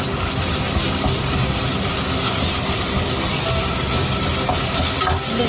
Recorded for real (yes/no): yes